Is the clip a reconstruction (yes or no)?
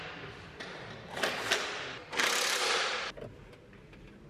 no